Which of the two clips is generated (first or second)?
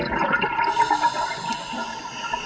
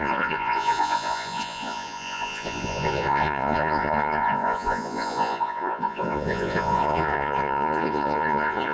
second